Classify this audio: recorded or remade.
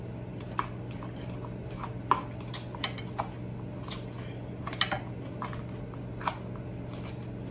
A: recorded